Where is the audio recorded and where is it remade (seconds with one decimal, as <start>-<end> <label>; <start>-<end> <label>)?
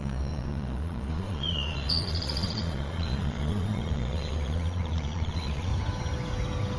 0.0-5.7 remade; 5.7-6.8 recorded